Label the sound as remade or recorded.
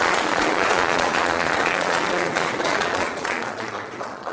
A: remade